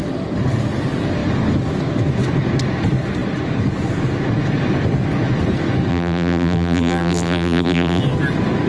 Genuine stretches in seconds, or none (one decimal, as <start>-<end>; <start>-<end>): 0.0-5.9; 8.0-8.7